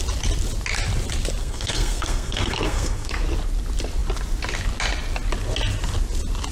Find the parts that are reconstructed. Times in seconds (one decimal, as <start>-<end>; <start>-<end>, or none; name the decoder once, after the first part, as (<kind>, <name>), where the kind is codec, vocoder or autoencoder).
1.4-3.1 (codec, SNAC)